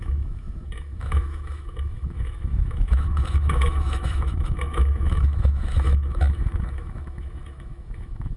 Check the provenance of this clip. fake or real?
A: fake